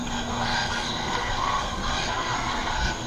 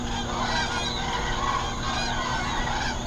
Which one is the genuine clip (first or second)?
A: second